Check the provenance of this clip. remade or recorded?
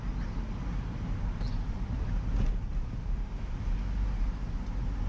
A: recorded